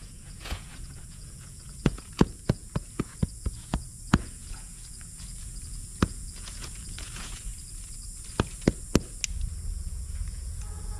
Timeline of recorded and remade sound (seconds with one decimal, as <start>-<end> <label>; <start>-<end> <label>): 0.0-7.5 remade; 7.5-9.8 recorded; 9.8-11.0 remade